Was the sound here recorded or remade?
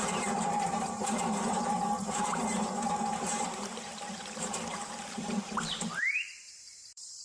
remade